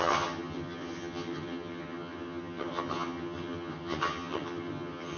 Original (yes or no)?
no